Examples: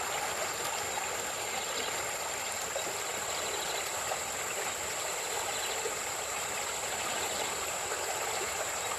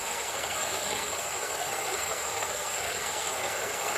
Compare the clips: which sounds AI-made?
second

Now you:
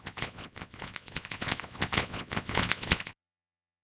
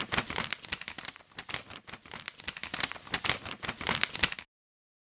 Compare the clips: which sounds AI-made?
first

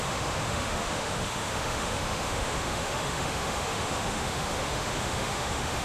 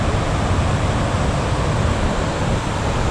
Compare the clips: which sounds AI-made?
first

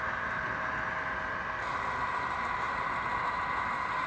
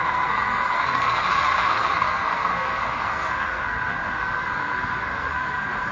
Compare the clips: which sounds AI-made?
second